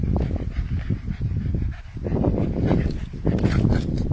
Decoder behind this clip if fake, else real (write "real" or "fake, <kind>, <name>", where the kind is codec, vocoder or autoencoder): real